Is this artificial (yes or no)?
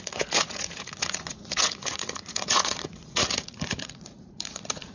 yes